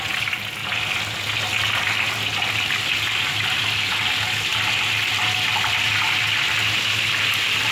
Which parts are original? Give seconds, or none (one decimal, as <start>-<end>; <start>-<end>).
0.0-7.7